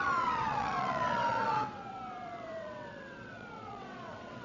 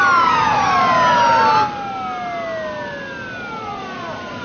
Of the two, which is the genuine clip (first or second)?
second